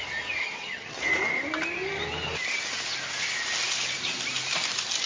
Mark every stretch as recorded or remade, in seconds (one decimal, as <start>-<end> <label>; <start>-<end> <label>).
0.0-0.4 recorded; 0.4-1.0 remade; 1.0-5.1 recorded